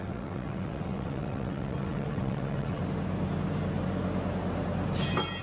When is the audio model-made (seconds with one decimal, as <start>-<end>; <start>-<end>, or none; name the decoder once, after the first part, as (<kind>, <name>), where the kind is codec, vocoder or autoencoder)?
0.0-2.8 (vocoder, WaveNeXt)